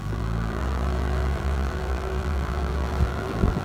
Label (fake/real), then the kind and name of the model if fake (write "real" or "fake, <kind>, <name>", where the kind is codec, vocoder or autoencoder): fake, vocoder, BigVGAN v2